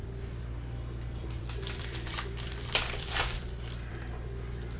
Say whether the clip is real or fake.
fake